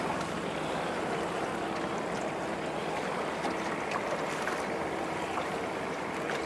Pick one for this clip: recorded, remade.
recorded